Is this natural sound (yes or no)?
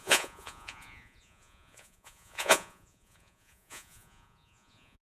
no